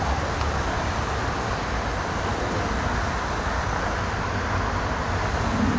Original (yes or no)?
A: yes